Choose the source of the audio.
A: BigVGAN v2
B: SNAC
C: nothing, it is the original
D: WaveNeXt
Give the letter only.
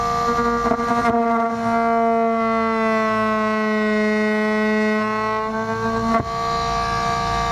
C